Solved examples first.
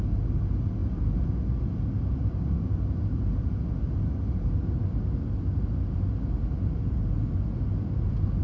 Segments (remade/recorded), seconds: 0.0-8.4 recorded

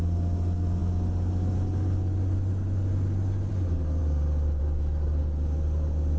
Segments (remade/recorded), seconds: 0.0-6.2 recorded

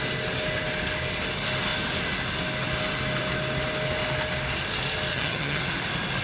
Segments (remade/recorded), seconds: 0.0-5.1 recorded; 5.1-5.6 remade; 5.6-6.2 recorded